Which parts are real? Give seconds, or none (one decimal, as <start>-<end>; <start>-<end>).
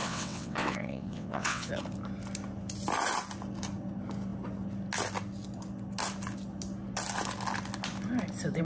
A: 1.7-8.6